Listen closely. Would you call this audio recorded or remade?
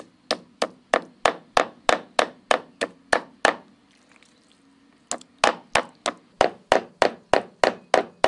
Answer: recorded